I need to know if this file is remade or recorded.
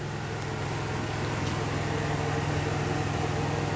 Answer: recorded